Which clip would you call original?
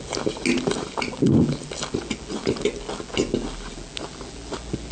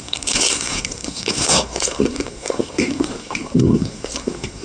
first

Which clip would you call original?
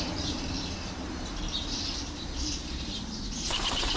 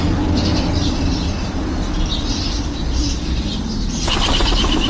second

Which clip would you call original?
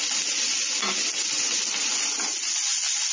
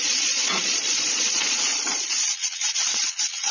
first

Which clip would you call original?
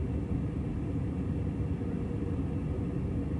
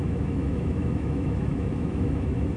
first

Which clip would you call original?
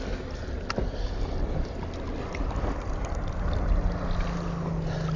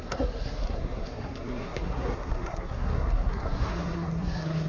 first